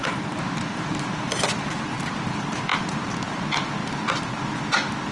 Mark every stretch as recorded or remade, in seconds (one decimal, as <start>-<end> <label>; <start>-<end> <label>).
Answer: 0.0-2.3 remade; 2.3-2.7 recorded; 2.7-3.3 remade; 3.3-3.8 recorded; 3.8-4.5 remade; 4.5-5.1 recorded